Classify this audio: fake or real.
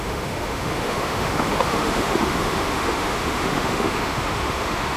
fake